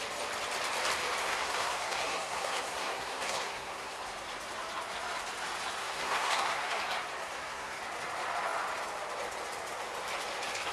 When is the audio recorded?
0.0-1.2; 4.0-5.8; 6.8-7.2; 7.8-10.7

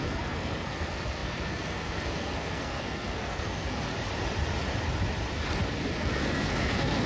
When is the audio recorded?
3.9-5.9

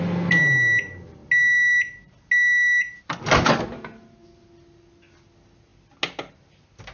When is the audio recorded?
0.0-6.9

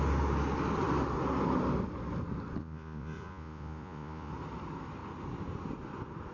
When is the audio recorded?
0.0-2.6; 4.3-6.3

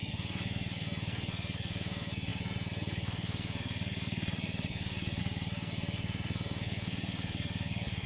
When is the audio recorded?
none

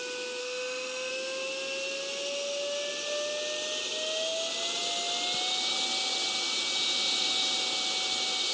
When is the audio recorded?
0.0-0.4; 1.1-8.5

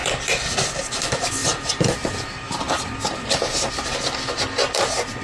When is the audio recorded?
0.0-1.4; 3.7-5.2